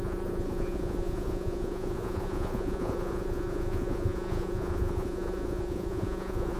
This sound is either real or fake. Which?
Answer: fake